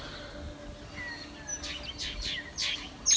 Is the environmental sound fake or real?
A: real